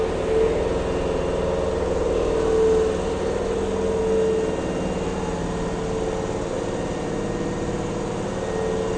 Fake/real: real